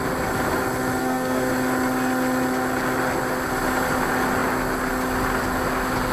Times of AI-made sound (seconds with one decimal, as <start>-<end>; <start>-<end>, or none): 1.0-1.5